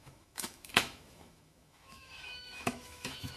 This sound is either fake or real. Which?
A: fake